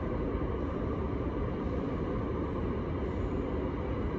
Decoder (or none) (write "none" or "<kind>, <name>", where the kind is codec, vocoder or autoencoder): none